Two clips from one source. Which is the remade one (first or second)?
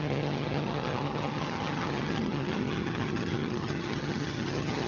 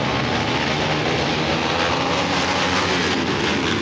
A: first